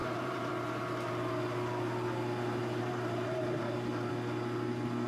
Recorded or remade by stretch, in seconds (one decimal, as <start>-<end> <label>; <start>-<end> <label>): 0.0-0.5 remade; 0.5-2.6 recorded; 2.6-4.1 remade; 4.1-5.1 recorded